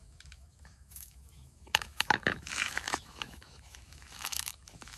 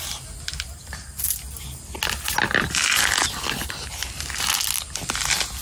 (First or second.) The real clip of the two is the second